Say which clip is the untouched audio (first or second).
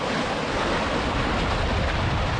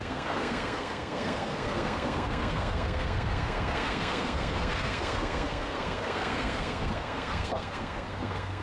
first